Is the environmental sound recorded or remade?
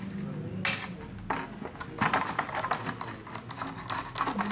recorded